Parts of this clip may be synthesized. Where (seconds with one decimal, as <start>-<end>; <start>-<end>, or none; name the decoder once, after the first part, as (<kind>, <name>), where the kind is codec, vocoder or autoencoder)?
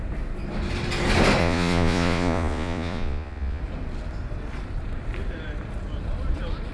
1.4-3.6 (vocoder, Vocos)